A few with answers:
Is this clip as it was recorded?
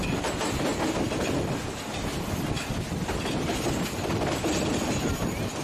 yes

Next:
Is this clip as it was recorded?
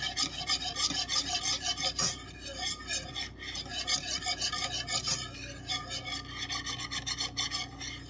yes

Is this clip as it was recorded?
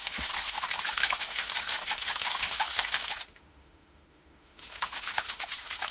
no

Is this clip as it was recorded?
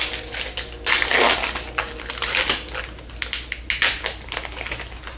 yes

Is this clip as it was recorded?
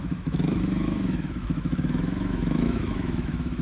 no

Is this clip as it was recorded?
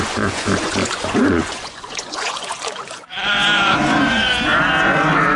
no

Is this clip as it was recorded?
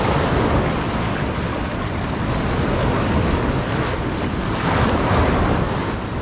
yes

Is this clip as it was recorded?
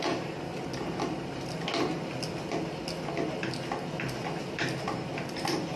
yes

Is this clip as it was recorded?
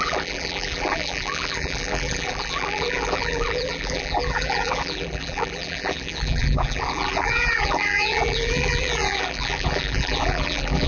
no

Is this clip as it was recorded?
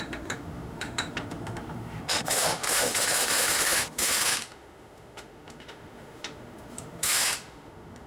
no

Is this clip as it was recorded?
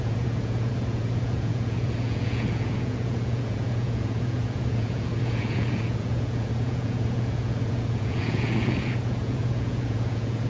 no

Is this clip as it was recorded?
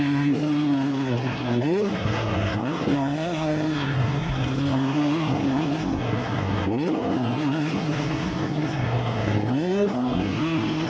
no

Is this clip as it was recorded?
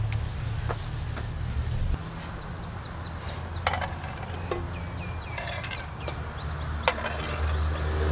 yes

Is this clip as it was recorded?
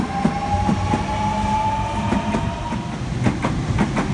yes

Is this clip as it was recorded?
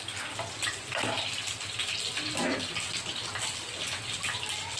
yes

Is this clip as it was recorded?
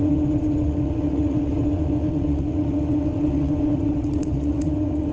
no